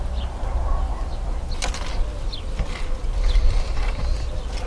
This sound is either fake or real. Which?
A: real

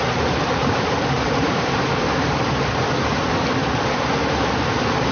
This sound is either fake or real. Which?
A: fake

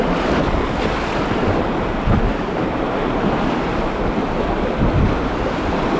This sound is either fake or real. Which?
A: real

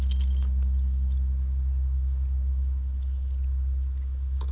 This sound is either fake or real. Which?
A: real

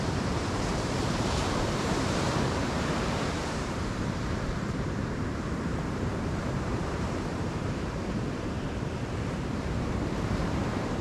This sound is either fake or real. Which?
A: fake